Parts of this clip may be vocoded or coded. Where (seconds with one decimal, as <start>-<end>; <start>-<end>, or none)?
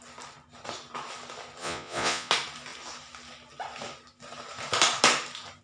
1.6-2.3